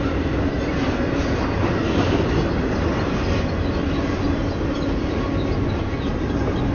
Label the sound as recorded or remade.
recorded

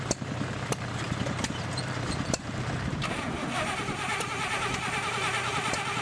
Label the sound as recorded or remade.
remade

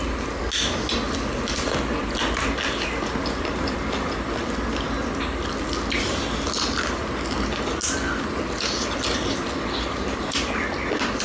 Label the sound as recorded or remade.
recorded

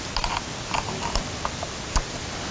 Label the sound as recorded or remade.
recorded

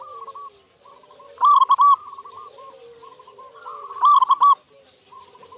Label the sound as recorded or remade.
recorded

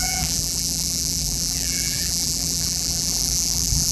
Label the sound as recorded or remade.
remade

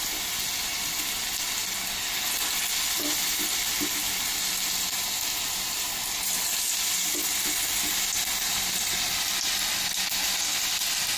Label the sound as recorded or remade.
recorded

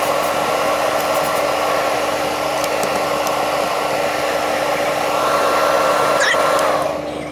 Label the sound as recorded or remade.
recorded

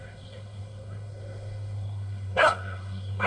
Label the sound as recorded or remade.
remade